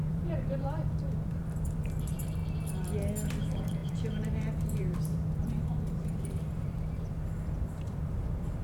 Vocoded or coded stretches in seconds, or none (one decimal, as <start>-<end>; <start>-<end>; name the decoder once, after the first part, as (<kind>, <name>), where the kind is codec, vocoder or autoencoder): 0.0-2.4 (vocoder, BigVGAN v2); 3.3-8.6